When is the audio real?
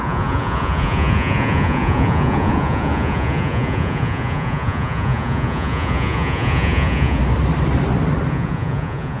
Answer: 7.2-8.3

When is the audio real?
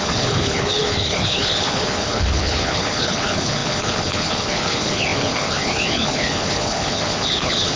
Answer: none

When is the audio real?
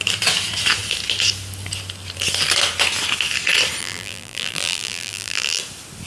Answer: 0.0-3.8; 5.6-6.1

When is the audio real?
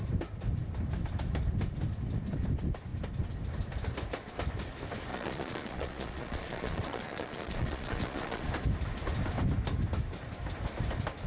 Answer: 0.0-5.1; 8.5-11.3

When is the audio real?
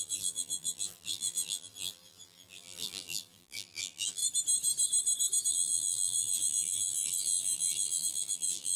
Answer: 4.2-5.5